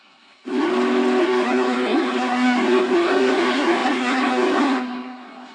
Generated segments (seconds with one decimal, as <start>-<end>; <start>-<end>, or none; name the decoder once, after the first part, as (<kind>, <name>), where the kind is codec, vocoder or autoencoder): 0.0-0.7 (codec, SNAC); 1.2-5.5